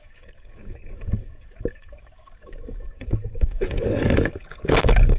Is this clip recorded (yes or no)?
no